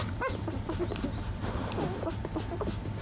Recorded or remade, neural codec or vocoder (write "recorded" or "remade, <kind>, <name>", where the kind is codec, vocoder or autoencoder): recorded